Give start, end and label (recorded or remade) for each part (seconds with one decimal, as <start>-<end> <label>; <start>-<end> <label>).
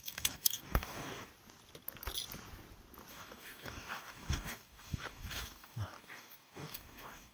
0.0-1.3 remade; 1.3-3.1 recorded; 3.1-7.3 remade